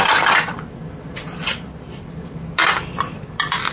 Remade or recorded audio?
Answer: recorded